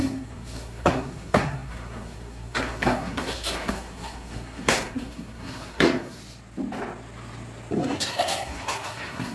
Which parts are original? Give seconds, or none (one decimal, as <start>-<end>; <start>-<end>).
6.2-7.7